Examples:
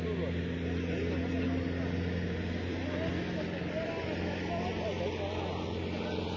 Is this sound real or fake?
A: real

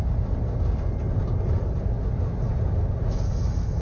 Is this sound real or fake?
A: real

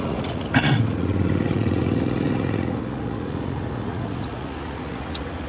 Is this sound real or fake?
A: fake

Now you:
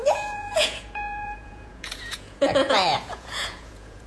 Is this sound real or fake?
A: fake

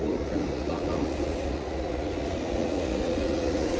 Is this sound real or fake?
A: fake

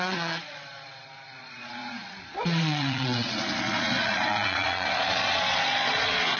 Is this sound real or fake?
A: fake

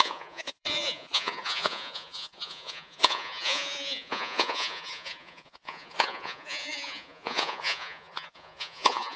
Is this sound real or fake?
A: fake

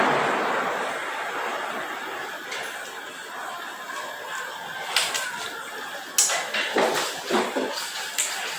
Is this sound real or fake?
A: real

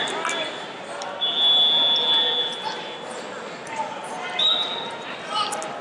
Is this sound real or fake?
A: real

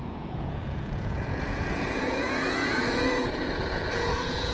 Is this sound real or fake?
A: fake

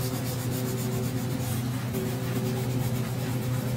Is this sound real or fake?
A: real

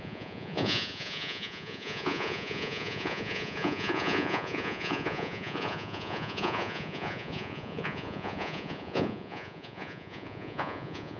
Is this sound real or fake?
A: fake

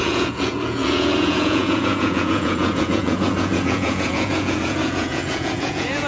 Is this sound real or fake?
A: fake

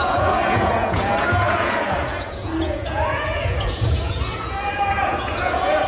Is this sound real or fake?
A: fake